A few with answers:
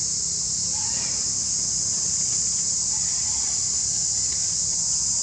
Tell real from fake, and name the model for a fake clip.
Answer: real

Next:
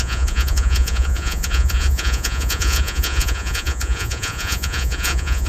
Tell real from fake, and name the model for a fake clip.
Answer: fake, vocoder, Vocos